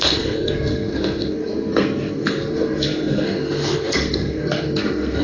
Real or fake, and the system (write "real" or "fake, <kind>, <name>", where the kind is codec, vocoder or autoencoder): fake, codec, SNAC